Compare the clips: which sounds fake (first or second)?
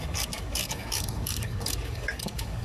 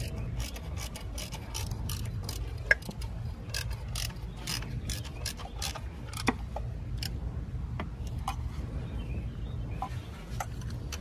first